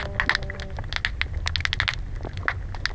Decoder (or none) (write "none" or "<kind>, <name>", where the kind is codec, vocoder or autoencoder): none